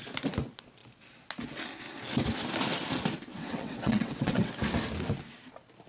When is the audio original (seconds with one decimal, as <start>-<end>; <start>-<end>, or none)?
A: 0.0-3.3; 4.5-5.9